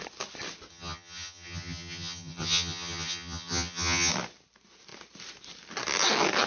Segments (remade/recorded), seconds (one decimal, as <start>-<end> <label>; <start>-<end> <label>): 0.0-0.7 recorded; 0.7-4.1 remade; 4.1-6.5 recorded